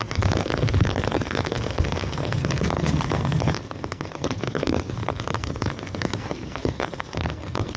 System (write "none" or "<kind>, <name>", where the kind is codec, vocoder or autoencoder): codec, SNAC